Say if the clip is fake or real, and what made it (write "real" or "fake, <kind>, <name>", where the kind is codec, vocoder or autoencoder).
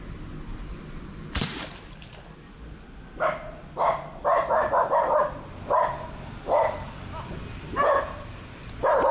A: real